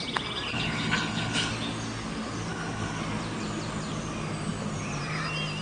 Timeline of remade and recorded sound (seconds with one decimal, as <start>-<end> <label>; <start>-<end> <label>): 0.0-0.5 recorded; 0.5-1.5 remade; 1.5-2.5 recorded; 2.5-3.0 remade; 3.0-5.6 recorded